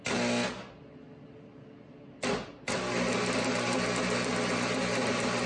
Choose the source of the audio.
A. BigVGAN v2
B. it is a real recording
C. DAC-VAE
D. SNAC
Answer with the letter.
B